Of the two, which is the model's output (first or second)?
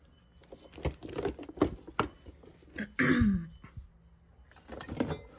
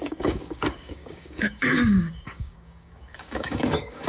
second